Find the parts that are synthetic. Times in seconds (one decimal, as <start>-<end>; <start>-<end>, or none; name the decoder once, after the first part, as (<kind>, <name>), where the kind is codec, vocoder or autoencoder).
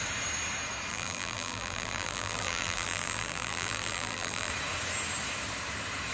0.9-4.5 (vocoder, BigVGAN v2)